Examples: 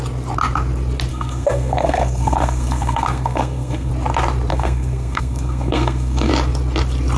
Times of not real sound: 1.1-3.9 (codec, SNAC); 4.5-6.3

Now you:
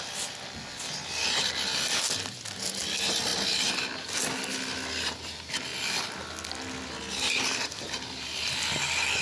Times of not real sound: none

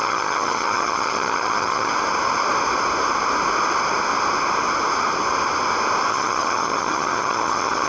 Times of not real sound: 0.0-1.9 (vocoder, HiFi-GAN); 6.1-7.9